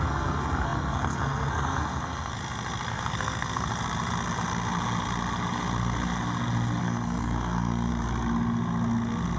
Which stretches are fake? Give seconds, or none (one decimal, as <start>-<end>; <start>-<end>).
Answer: 0.0-2.4; 2.9-3.7; 6.8-7.9